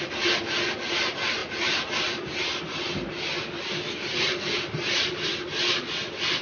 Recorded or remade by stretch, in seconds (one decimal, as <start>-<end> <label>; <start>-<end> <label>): 0.0-6.4 recorded